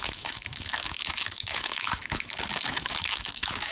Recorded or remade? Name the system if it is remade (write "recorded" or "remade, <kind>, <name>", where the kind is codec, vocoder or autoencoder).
remade, autoencoder, DAC-VAE